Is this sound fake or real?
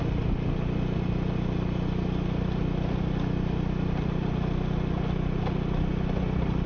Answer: real